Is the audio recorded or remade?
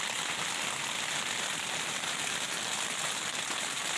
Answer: recorded